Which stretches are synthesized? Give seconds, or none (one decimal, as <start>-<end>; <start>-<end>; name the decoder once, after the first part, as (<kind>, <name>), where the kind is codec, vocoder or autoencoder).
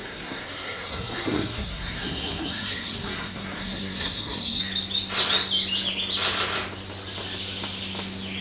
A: 0.0-4.6 (codec, SNAC)